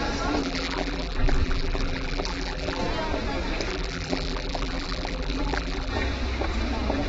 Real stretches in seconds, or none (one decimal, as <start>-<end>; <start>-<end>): 0.0-0.4; 2.8-3.7; 5.9-7.1